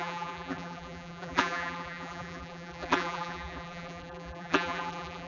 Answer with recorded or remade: remade